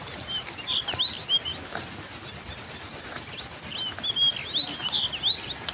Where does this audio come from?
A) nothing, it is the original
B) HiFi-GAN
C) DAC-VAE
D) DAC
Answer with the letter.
A